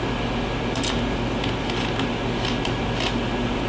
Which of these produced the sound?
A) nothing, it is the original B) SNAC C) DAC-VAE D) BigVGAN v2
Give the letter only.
A